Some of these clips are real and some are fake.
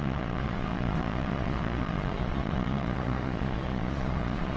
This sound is fake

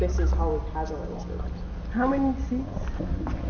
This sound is real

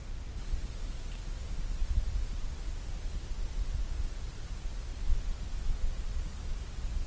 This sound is real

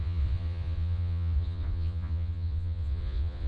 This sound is fake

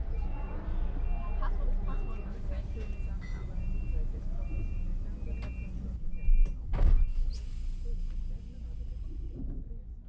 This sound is real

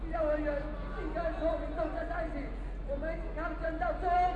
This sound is real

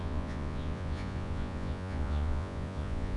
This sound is fake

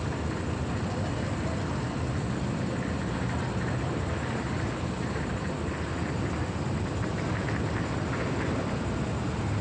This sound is real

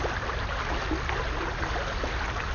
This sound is real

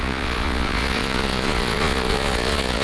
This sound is fake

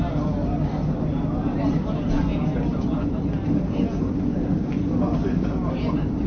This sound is real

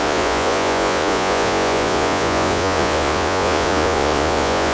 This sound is fake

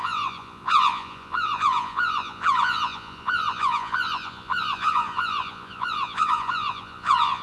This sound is fake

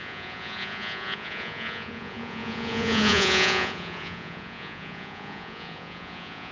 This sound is fake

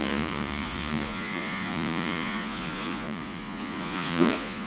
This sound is fake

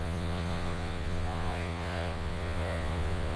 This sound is fake